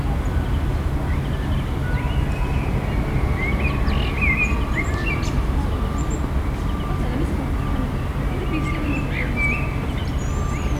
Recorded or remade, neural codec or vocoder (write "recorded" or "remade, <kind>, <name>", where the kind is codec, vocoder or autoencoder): recorded